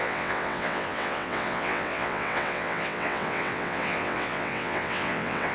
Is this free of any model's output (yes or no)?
no